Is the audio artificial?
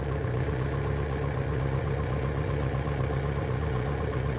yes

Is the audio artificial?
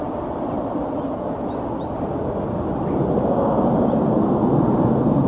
no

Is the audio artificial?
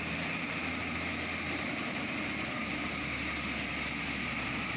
no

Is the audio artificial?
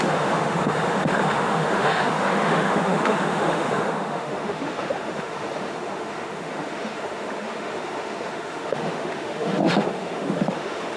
yes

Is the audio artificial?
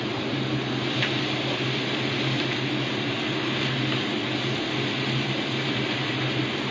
no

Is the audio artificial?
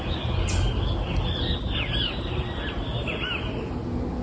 no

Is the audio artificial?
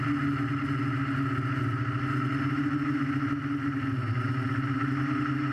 no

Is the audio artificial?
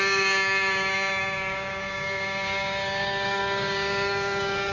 yes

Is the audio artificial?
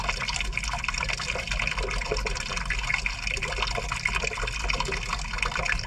no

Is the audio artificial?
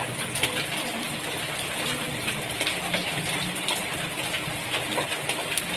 no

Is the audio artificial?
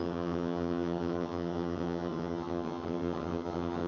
yes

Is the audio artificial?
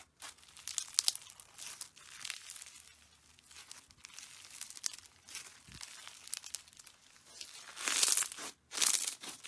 no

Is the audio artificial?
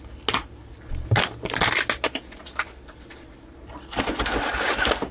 no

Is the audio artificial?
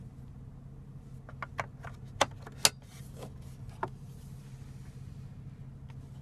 no